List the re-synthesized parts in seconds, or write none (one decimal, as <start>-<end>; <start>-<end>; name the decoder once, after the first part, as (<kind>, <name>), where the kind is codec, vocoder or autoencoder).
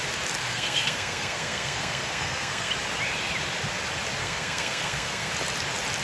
0.4-2.7 (codec, SNAC); 4.2-5.3